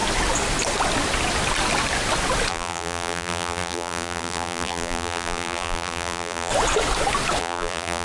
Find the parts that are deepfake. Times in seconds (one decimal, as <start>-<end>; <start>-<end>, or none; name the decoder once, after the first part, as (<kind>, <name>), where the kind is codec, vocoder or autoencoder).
2.5-6.5 (vocoder, BigVGAN v2); 7.4-8.0